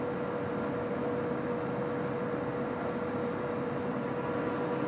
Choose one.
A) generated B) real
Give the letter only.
B